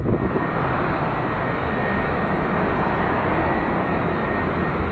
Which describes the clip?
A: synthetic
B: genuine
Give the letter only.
B